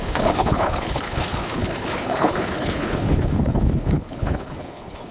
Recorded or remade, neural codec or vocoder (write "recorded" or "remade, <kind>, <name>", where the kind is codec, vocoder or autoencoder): remade, codec, HILCodec